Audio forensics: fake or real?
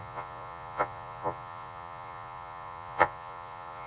fake